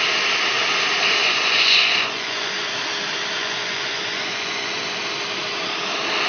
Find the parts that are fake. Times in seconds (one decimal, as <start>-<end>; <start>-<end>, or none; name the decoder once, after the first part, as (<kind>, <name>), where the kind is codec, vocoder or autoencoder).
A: 1.2-2.7 (vocoder, Vocos); 3.4-5.0